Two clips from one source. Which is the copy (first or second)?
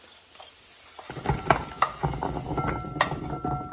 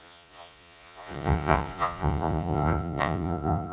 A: second